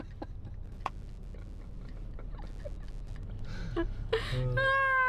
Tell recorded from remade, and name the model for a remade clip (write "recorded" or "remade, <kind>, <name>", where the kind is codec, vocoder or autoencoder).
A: recorded